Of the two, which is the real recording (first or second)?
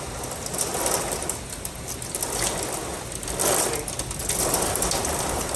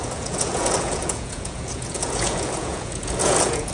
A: first